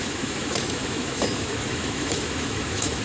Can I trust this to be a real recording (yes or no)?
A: no